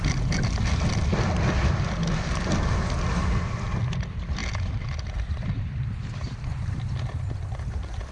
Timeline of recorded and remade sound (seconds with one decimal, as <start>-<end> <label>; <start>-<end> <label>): 0.0-4.4 recorded; 4.4-5.0 remade; 5.0-8.1 recorded

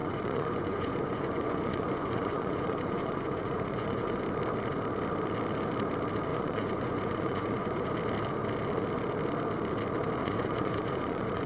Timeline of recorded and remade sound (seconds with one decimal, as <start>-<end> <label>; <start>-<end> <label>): 0.0-4.2 remade; 4.2-6.3 recorded; 6.3-7.9 remade; 7.9-10.2 recorded; 10.2-11.5 remade

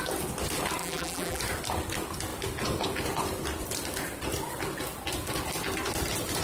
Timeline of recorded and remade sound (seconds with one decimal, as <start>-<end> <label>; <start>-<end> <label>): 0.0-0.8 recorded; 0.8-1.4 remade; 1.4-6.4 recorded

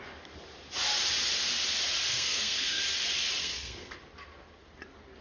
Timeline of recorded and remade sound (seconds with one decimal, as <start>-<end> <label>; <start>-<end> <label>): 0.0-2.1 recorded; 2.1-2.8 remade; 2.8-3.4 recorded; 3.4-4.0 remade; 4.0-5.2 recorded

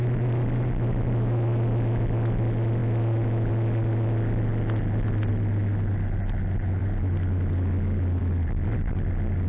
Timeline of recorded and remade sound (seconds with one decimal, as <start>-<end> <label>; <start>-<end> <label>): 0.0-9.5 recorded

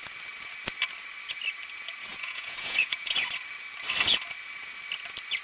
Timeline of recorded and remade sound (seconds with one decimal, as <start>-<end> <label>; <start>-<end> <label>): 0.0-2.1 recorded; 2.1-3.2 remade; 3.2-5.4 recorded

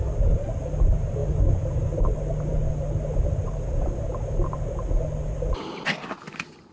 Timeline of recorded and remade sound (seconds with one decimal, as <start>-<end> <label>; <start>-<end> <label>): 0.0-6.7 recorded